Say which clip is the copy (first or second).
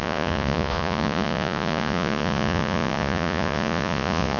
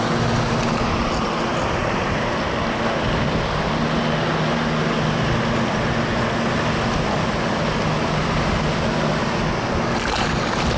first